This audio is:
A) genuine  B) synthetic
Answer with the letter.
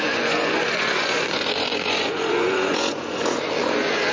B